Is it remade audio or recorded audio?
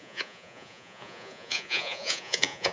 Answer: remade